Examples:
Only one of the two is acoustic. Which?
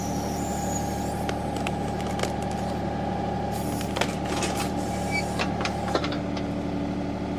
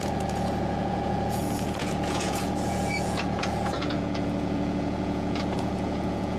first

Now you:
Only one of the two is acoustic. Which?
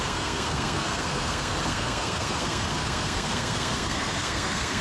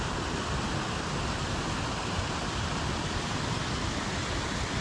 second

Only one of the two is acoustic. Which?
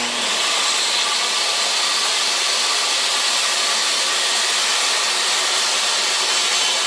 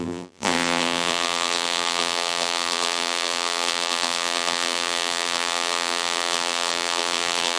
first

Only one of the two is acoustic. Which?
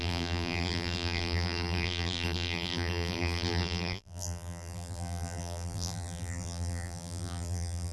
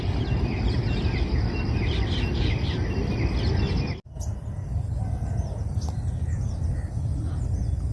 second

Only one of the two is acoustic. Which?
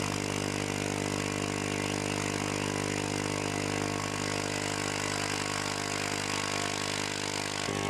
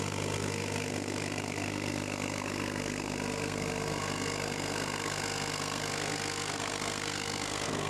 first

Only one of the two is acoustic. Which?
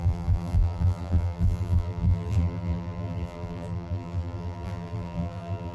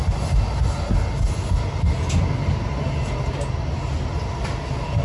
second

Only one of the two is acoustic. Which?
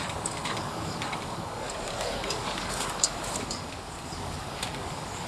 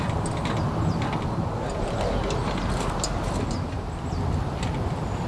second